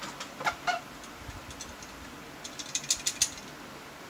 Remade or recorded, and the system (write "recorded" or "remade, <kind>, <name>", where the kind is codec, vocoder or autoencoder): recorded